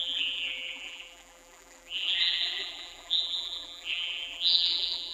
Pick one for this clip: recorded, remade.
remade